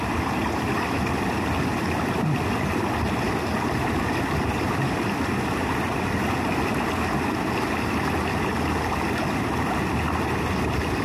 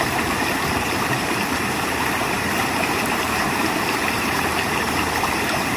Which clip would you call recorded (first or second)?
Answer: first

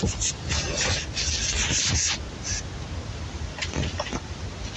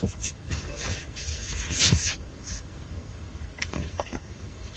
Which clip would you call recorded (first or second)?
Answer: first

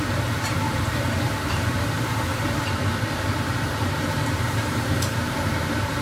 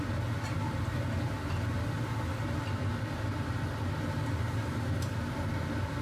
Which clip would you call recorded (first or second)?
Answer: second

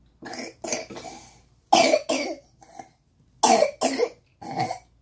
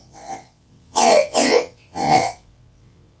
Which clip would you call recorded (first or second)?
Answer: first